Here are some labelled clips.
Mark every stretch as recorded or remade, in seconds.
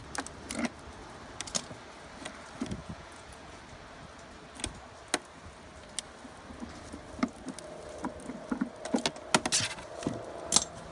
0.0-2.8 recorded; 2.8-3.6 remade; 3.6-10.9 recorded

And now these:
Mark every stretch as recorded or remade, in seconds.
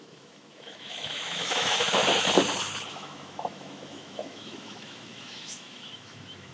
0.0-2.0 remade; 2.0-2.9 recorded; 2.9-6.5 remade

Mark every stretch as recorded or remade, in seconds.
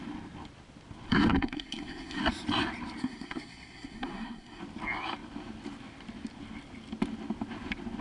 0.0-1.1 recorded; 1.1-2.2 remade; 2.2-3.0 recorded; 3.0-4.6 remade; 4.6-8.0 recorded